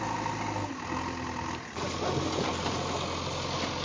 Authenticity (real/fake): real